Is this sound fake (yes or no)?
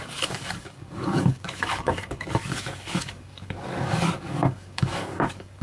yes